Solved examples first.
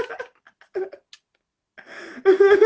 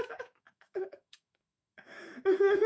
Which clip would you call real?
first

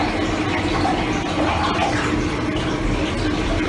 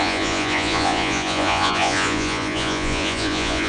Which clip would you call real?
first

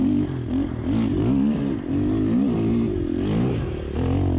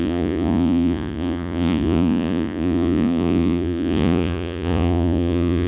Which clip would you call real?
first